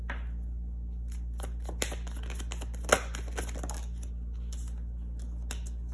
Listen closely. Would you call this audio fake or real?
real